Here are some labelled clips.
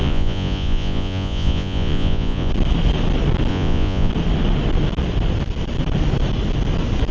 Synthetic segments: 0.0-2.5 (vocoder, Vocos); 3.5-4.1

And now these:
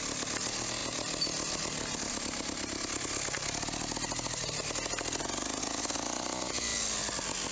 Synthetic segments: none

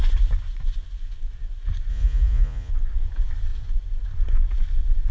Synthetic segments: 1.9-2.7 (vocoder, Vocos)

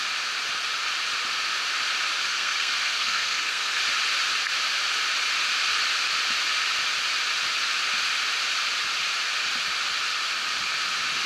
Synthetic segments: 2.3-3.8 (codec, SNAC)

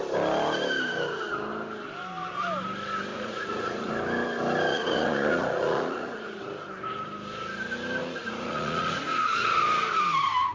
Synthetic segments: 3.1-3.9 (vocoder, Vocos); 4.7-6.4; 8.0-9.6